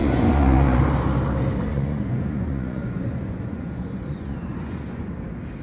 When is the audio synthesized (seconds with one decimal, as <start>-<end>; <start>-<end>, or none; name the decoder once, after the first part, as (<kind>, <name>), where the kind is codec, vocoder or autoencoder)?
0.0-0.8 (vocoder, Vocos); 1.7-5.1